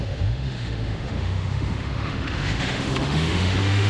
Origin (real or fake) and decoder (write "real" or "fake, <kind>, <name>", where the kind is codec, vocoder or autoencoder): fake, autoencoder, DAC-VAE